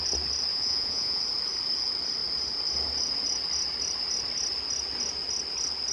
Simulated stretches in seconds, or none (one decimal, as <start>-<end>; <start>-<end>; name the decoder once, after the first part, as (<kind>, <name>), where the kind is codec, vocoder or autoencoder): 0.5-1.2 (vocoder, Vocos)